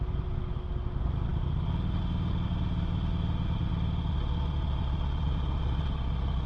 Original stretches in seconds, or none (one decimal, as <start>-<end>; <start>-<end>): 0.0-6.5